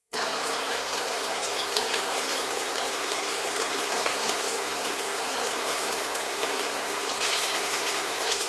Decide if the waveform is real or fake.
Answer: fake